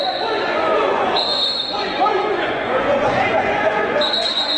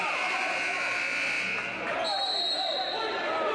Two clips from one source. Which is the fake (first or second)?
first